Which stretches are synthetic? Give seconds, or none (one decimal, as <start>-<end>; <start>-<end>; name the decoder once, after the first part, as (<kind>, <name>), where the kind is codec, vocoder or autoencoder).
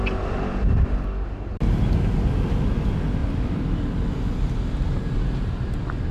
none